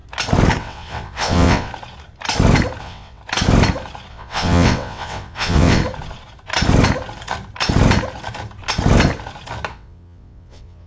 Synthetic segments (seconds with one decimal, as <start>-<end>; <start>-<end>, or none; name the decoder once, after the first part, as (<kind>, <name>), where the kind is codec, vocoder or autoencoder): 0.6-1.7 (vocoder, WaveNeXt); 2.8-3.2; 4.1-5.8; 9.7-10.9